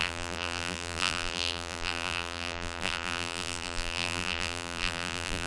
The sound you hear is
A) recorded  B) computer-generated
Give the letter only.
B